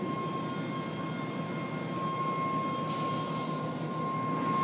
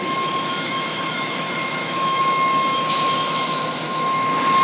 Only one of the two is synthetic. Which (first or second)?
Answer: second